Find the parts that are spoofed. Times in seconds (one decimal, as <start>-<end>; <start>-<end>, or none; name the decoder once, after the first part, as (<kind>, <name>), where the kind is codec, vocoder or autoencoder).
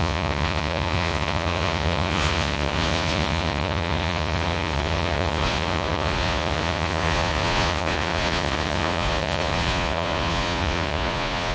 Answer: 0.0-11.5 (vocoder, Vocos)